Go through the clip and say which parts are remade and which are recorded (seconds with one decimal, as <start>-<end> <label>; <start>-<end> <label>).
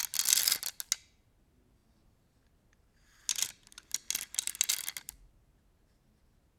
0.0-6.6 recorded